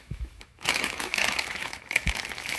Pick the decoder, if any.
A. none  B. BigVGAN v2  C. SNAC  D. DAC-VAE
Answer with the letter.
D